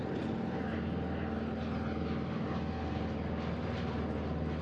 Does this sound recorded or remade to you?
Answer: recorded